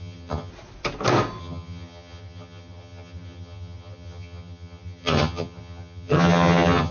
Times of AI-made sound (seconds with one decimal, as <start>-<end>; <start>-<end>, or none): 0.0-0.5; 1.4-6.9